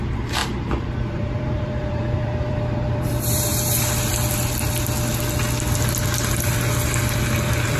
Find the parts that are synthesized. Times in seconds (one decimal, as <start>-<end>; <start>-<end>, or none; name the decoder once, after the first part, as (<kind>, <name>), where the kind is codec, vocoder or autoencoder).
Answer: 0.0-3.5 (vocoder, BigVGAN v2)